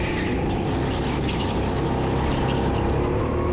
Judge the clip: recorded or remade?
recorded